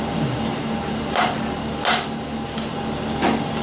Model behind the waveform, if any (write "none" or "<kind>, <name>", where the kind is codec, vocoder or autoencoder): none